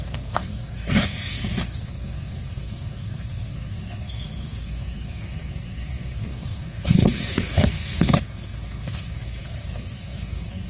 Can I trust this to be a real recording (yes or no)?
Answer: no